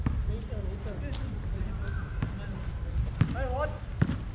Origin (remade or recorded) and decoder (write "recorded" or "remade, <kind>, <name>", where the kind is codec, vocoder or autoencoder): recorded